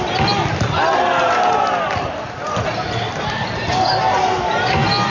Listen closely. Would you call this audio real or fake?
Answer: real